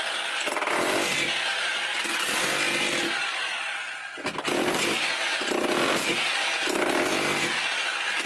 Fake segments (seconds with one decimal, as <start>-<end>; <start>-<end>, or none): none